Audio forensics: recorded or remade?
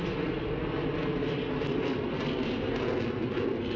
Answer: recorded